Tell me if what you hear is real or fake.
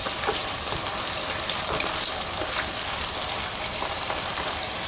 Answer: fake